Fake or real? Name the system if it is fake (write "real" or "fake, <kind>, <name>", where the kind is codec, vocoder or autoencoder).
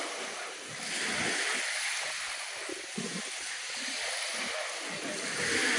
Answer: real